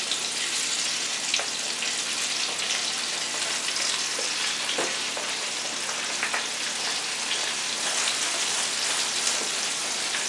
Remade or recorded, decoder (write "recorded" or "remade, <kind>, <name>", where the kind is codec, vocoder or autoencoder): recorded